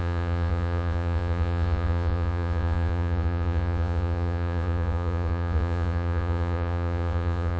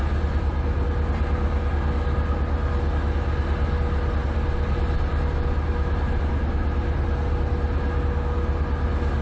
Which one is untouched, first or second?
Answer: second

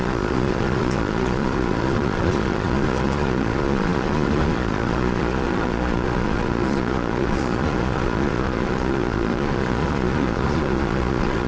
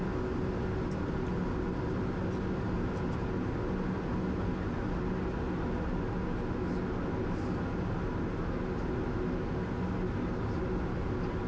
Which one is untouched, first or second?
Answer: second